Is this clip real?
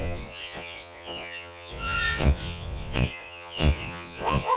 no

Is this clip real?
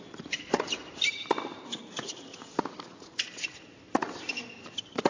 yes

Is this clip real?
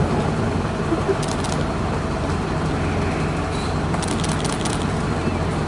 yes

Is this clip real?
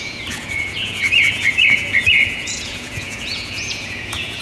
no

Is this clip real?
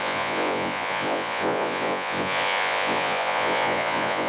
no